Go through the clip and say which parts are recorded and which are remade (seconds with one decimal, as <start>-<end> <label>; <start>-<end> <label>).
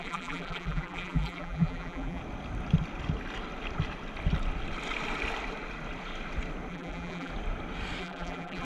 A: 0.0-2.2 remade; 2.2-6.7 recorded; 6.7-7.3 remade; 7.3-8.0 recorded; 8.0-8.6 remade